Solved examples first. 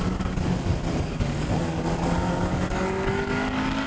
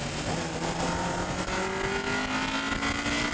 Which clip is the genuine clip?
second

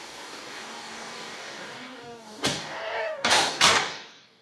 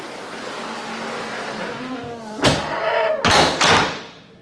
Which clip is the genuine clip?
second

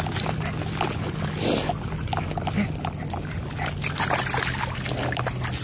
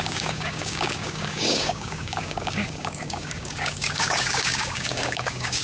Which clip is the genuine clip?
first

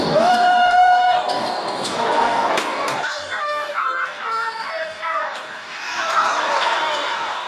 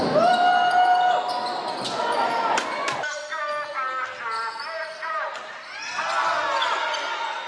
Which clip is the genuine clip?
second